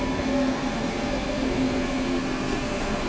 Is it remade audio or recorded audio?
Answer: remade